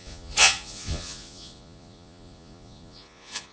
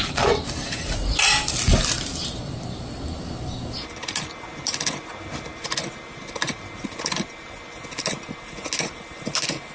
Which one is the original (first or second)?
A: second